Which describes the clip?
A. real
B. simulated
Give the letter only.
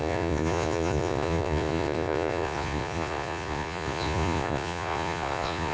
B